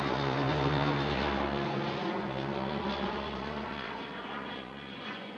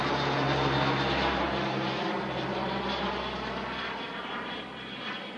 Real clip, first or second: second